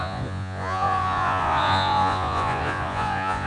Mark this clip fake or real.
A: fake